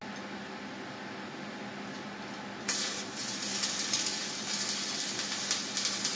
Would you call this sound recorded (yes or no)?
yes